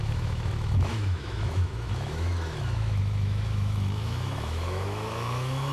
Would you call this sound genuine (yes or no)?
no